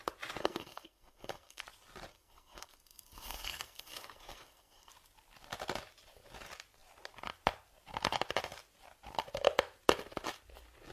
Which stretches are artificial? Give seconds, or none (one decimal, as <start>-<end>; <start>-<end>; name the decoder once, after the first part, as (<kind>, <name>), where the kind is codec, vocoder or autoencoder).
0.4-1.6 (codec, SNAC); 2.1-4.9